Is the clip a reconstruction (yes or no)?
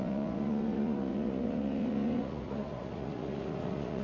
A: yes